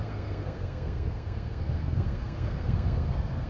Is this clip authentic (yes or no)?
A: no